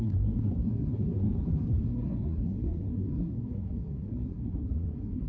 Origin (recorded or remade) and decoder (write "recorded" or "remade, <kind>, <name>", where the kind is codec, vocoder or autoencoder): remade, codec, SNAC